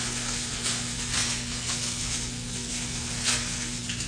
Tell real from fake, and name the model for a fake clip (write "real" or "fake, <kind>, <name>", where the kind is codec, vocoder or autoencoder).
fake, codec, SNAC